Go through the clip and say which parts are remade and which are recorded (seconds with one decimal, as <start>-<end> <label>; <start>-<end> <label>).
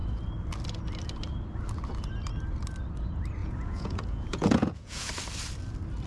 0.0-3.4 recorded; 3.4-5.1 remade; 5.1-6.1 recorded